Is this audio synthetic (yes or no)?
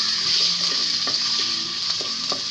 no